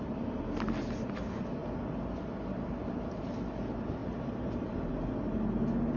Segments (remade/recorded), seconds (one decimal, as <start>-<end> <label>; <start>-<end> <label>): 0.0-4.0 recorded; 4.0-4.9 remade; 4.9-6.0 recorded